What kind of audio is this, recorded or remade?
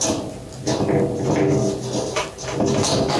recorded